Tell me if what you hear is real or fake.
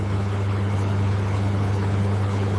fake